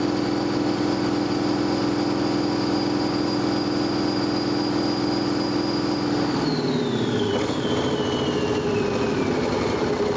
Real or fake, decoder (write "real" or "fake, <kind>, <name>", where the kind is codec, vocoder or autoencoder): real